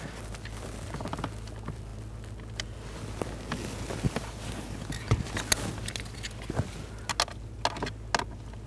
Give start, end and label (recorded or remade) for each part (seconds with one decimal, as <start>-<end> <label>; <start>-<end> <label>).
0.0-8.7 recorded